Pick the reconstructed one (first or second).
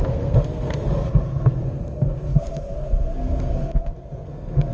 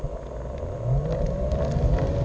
first